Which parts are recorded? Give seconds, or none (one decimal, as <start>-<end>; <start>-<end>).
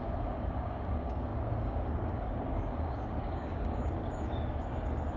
none